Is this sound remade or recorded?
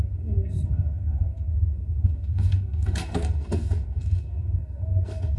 remade